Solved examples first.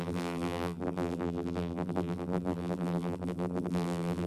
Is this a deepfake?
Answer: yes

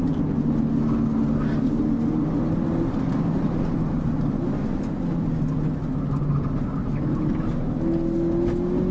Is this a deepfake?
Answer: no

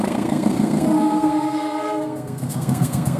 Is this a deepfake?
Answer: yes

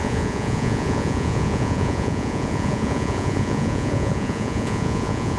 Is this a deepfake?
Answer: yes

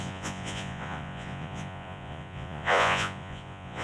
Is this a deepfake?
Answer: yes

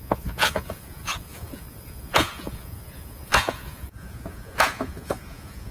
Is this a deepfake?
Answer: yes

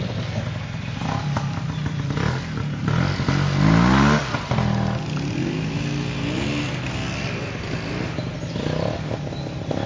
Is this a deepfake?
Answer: no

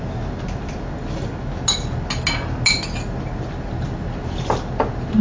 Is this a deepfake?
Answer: no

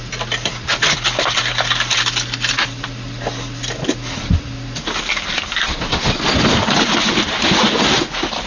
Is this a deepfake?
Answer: no